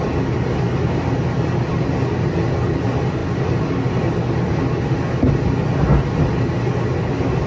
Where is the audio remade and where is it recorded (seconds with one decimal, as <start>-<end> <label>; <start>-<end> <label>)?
0.0-7.5 recorded